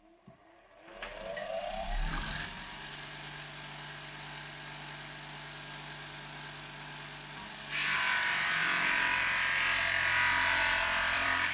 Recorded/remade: remade